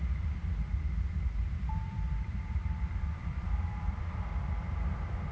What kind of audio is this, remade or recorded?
remade